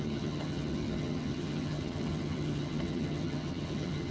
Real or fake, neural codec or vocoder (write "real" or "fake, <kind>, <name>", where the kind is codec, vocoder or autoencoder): fake, vocoder, HiFi-GAN